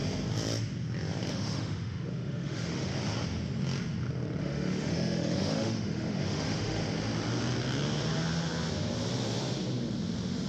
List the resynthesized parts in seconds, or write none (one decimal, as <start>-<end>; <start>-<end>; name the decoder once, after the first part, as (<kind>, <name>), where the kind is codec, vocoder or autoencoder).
1.3-2.9 (autoencoder, DAC-VAE); 4.4-6.8